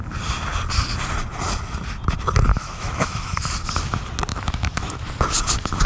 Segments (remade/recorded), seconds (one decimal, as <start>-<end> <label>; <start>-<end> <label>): 0.0-2.5 recorded; 2.5-3.5 remade; 3.5-4.3 recorded; 4.3-5.1 remade; 5.1-5.9 recorded